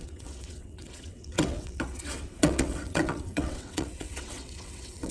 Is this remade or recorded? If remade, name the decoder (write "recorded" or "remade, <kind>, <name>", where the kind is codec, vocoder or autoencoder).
remade, vocoder, WaveNeXt